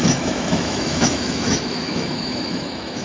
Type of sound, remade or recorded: remade